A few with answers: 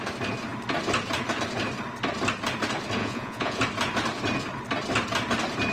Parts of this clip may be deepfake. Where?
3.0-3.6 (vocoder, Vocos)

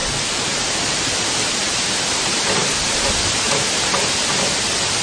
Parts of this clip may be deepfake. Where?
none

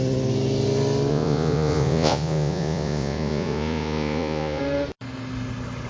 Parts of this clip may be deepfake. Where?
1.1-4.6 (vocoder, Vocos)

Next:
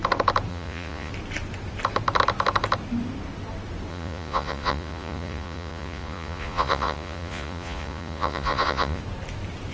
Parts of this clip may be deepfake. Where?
0.5-1.1 (vocoder, Vocos); 3.9-9.0

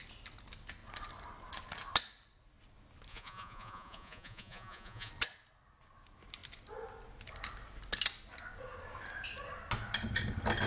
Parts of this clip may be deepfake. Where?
3.1-5.1 (vocoder, Vocos)

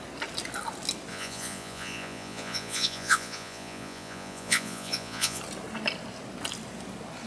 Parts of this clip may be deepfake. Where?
1.1-5.4 (vocoder, Vocos)

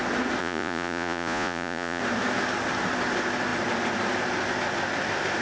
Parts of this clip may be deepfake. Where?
0.4-2.0 (vocoder, Vocos)

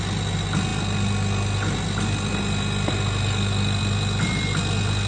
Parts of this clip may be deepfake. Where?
none